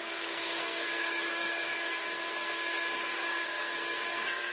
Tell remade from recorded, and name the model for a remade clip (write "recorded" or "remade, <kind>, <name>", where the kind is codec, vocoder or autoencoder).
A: remade, codec, SNAC